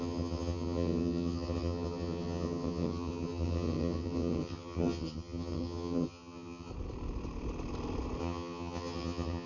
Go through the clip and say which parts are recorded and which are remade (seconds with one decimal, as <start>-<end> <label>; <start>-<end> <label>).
0.0-6.7 remade; 6.7-8.2 recorded; 8.2-9.5 remade